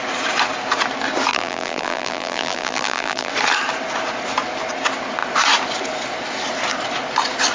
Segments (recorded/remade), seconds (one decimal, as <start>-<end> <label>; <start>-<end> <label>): 0.0-1.3 recorded; 1.3-3.3 remade; 3.3-7.5 recorded